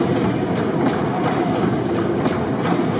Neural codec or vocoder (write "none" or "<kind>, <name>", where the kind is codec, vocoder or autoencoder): none